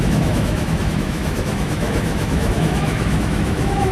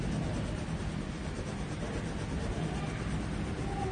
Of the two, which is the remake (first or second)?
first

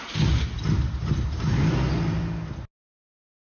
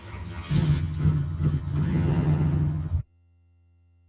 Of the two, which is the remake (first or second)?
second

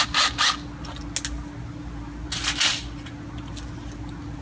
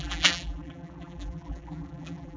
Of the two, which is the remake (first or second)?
second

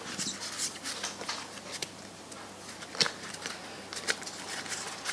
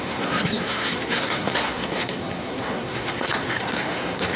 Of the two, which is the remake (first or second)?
second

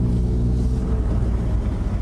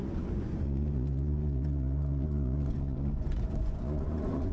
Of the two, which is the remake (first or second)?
second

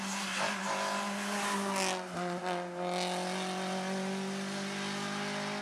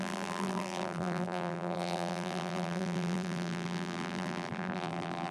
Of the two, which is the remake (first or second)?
second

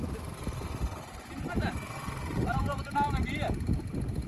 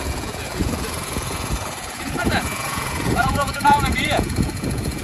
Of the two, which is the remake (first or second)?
second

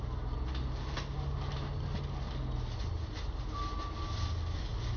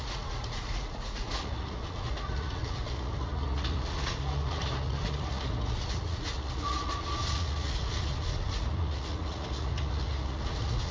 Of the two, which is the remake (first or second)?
second